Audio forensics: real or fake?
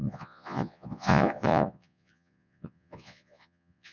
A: fake